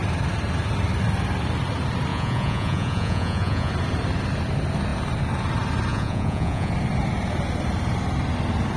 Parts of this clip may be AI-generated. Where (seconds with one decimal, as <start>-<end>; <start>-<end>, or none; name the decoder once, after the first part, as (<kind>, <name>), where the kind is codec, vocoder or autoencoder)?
2.1-3.7 (vocoder, Vocos); 5.9-6.7